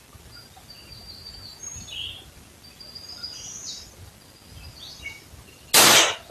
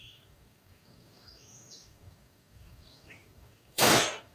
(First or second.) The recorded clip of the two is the first